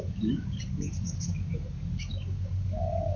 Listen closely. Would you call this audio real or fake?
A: fake